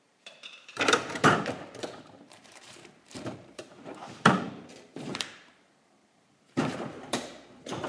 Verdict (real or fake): fake